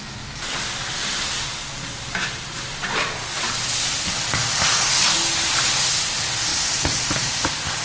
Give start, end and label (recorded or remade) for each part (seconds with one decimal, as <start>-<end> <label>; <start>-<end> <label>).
0.0-7.8 recorded